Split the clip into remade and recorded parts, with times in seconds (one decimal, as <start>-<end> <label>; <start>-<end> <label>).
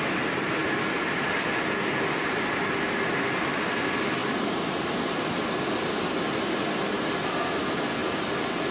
0.0-8.7 recorded